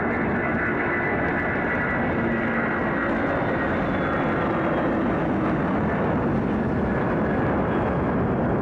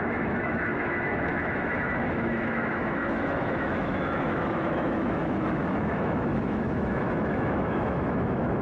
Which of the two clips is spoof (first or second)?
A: second